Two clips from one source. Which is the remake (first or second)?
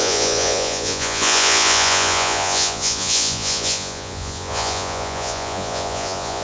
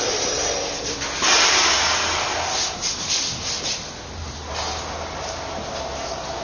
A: first